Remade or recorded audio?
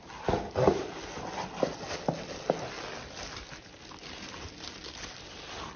recorded